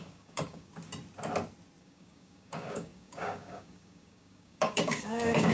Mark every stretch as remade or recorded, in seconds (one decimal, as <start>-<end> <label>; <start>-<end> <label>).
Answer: 0.0-0.7 remade; 0.7-1.8 recorded; 1.8-5.5 remade

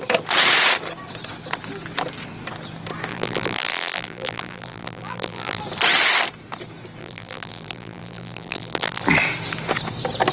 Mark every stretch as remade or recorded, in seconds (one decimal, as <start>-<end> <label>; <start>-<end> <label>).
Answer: 0.0-3.1 recorded; 3.1-5.6 remade; 5.6-7.0 recorded; 7.0-9.0 remade; 9.0-10.3 recorded